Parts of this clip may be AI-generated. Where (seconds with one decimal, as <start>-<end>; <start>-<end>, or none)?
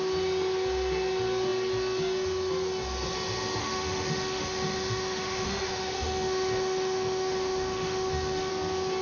3.6-8.5